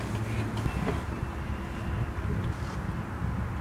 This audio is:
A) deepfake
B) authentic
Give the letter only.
B